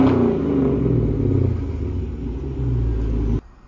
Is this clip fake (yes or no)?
no